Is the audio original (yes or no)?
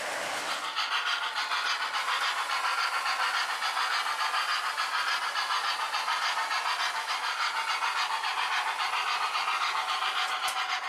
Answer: yes